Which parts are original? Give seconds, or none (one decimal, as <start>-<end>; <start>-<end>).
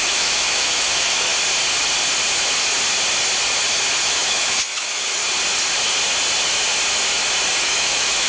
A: 1.3-4.0; 5.2-7.6